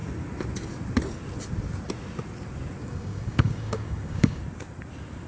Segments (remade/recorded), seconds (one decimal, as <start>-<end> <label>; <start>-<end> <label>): 0.0-2.8 recorded; 2.8-4.4 remade; 4.4-5.3 recorded